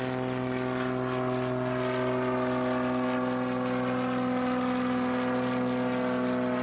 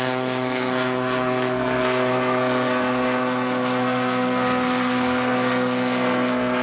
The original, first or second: first